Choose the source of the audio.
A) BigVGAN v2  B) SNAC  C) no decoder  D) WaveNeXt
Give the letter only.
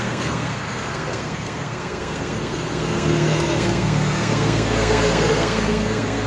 B